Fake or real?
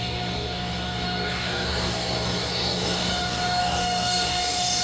fake